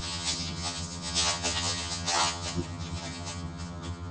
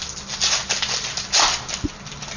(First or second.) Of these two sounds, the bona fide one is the second